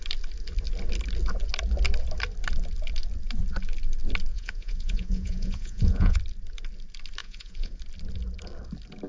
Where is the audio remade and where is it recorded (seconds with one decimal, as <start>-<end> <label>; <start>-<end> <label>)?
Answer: 0.0-4.3 recorded; 4.3-6.2 remade; 6.2-7.2 recorded; 7.2-7.8 remade; 7.8-9.1 recorded

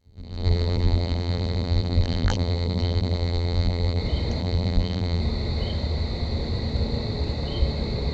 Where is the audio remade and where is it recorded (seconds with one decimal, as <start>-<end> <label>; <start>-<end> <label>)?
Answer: 0.0-4.0 remade; 4.0-4.4 recorded; 4.4-5.2 remade; 5.2-8.1 recorded

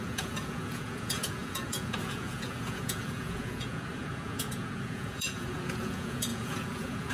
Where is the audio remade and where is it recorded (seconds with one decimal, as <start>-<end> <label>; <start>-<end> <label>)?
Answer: 0.0-7.1 remade

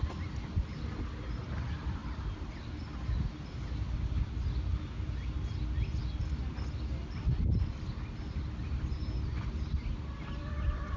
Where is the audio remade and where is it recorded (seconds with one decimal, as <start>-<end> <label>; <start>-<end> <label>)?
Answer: 0.0-11.0 recorded

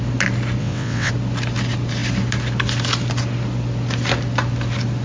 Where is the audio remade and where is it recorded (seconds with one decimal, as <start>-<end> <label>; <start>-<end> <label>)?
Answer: 0.0-0.6 recorded; 0.6-1.1 remade; 1.1-5.0 recorded

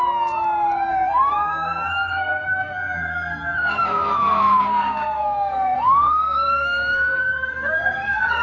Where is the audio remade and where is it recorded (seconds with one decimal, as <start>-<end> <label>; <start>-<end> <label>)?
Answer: 0.0-0.9 recorded; 0.9-8.4 remade